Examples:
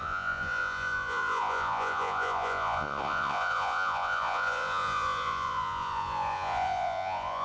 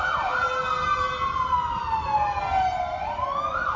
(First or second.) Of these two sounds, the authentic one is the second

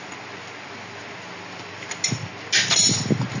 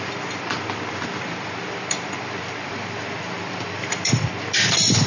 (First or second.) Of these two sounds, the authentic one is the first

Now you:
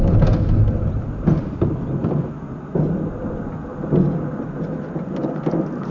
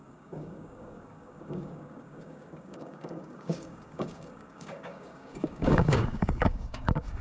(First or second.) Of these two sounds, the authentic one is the first